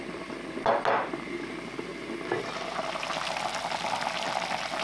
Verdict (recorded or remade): recorded